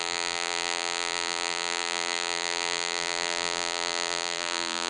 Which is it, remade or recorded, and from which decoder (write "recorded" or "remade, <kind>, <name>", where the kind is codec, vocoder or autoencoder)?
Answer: remade, vocoder, BigVGAN v2